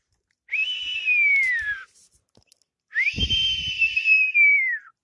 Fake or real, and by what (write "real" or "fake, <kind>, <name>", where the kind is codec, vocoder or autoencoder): real